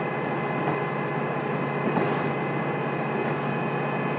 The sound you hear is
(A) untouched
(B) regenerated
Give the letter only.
A